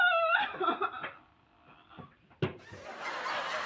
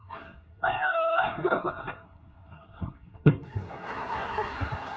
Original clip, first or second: first